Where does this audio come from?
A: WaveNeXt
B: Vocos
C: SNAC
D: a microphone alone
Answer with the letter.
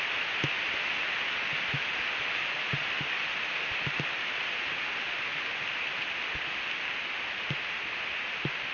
D